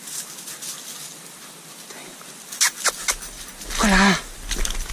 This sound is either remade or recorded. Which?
recorded